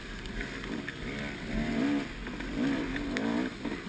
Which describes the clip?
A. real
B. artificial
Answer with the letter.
A